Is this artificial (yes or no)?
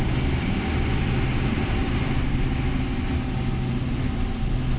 no